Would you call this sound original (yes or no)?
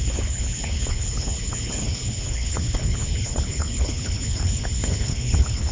no